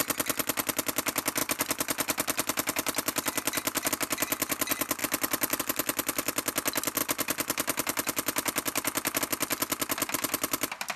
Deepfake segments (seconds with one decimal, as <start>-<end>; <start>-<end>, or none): 1.4-3.9; 7.0-9.2